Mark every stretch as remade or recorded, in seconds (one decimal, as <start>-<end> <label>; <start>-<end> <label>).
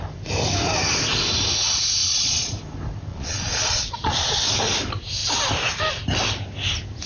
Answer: 0.0-2.0 recorded; 2.0-2.5 remade; 2.5-3.1 recorded; 3.1-4.4 remade; 4.4-7.1 recorded